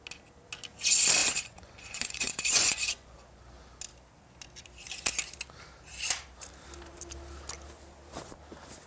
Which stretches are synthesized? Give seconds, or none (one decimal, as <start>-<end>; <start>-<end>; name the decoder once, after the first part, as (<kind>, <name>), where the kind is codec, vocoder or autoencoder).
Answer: 1.2-3.4 (vocoder, Vocos)